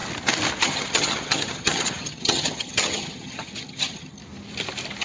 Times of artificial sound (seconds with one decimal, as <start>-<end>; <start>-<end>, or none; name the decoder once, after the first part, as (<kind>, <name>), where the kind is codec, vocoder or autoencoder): 0.6-4.2 (vocoder, HiFi-GAN)

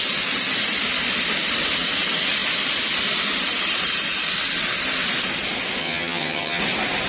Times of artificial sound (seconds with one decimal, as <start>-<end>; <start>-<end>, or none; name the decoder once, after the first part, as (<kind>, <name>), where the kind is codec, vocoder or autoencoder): 5.8-6.6 (vocoder, HiFi-GAN)